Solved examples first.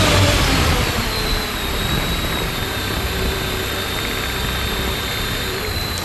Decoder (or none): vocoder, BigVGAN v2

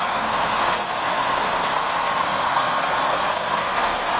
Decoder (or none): codec, SNAC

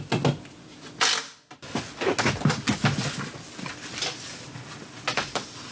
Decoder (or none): none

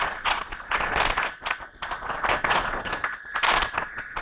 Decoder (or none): none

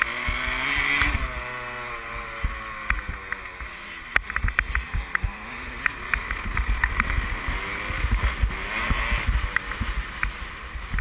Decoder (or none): none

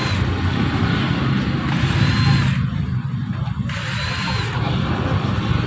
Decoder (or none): none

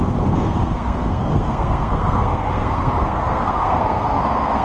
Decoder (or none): codec, SNAC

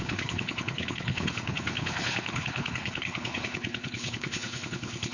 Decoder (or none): codec, HILCodec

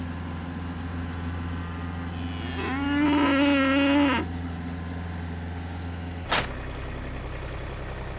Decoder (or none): none